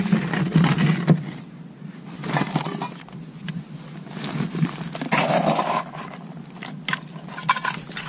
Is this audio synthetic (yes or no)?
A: no